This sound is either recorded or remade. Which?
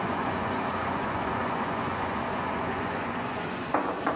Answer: remade